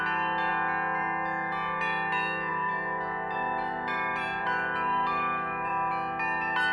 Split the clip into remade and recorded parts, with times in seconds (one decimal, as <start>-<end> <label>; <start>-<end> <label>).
0.0-2.5 recorded; 2.5-5.9 remade; 5.9-6.7 recorded